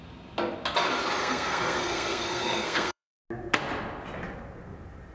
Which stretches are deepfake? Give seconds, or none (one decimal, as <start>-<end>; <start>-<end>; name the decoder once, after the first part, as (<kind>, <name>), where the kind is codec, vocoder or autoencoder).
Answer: 1.2-3.2 (codec, SNAC)